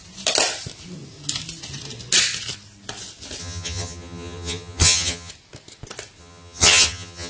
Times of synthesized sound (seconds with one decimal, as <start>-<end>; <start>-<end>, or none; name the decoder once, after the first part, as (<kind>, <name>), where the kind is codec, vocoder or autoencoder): 3.4-5.3 (vocoder, HiFi-GAN); 6.2-7.3